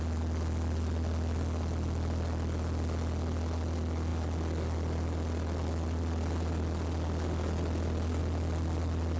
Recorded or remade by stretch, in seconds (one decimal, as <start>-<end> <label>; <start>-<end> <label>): 0.0-9.2 recorded